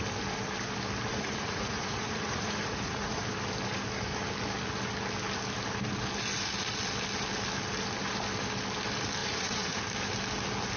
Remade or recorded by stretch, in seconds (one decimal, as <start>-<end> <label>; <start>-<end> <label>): 0.0-1.1 recorded; 1.1-3.2 remade; 3.2-9.2 recorded; 9.2-9.8 remade; 9.8-10.8 recorded